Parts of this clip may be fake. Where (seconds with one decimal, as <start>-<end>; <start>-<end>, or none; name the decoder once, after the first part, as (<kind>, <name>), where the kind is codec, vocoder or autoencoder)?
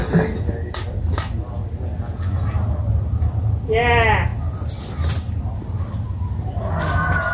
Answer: none